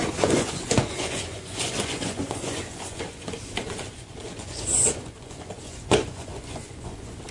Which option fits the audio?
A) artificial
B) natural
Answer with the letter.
A